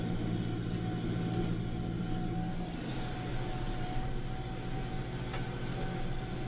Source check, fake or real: real